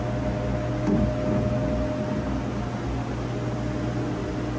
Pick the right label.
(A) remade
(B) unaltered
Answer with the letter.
B